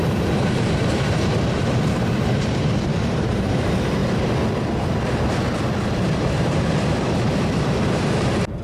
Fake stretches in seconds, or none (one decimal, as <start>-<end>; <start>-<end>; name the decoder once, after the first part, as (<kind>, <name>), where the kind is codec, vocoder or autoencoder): 0.0-4.0 (vocoder, BigVGAN v2); 5.8-8.6